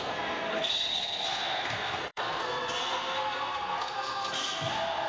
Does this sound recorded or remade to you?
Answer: remade